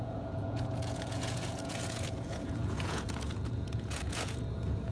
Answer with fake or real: fake